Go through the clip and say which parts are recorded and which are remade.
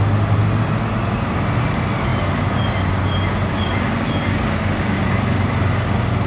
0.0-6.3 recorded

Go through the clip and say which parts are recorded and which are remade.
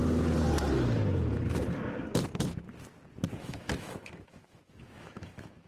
0.0-3.4 recorded; 3.4-5.7 remade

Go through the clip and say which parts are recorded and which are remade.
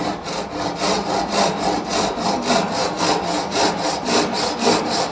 0.0-1.9 remade; 1.9-3.9 recorded; 3.9-5.1 remade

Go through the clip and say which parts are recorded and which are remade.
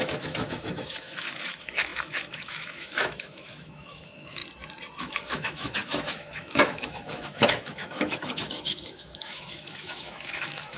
0.0-4.4 remade; 4.4-5.0 recorded; 5.0-10.8 remade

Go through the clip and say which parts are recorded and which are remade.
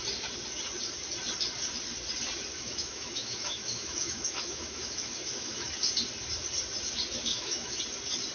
0.0-2.5 recorded; 2.5-5.7 remade; 5.7-7.3 recorded; 7.3-7.8 remade; 7.8-8.3 recorded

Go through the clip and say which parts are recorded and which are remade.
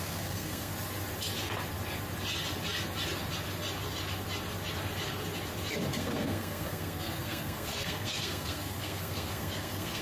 0.0-0.7 remade; 0.7-6.0 recorded; 6.0-10.0 remade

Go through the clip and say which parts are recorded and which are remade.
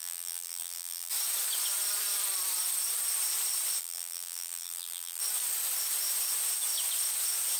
0.0-1.1 remade; 1.1-3.8 recorded; 3.8-5.2 remade; 5.2-7.6 recorded